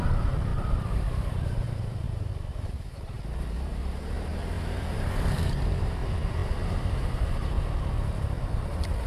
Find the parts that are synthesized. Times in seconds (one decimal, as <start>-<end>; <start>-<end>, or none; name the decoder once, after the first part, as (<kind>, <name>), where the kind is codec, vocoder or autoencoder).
0.0-6.0 (vocoder, BigVGAN v2); 6.8-9.1

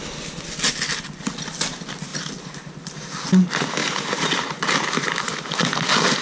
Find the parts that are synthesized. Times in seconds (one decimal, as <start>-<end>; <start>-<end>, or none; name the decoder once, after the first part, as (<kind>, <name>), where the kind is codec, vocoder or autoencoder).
2.1-3.0 (vocoder, BigVGAN v2); 3.8-5.3